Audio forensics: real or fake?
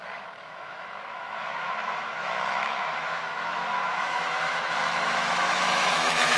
fake